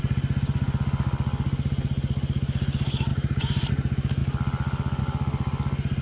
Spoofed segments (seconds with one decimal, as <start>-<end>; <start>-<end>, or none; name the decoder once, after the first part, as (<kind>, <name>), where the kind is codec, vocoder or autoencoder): 3.1-3.7 (vocoder, BigVGAN v2)